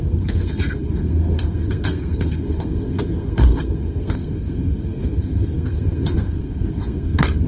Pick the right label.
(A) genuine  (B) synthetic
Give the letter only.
B